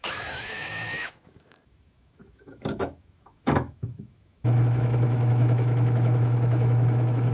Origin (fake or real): fake